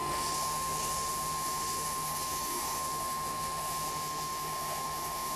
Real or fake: fake